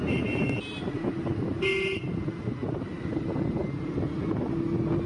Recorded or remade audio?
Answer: recorded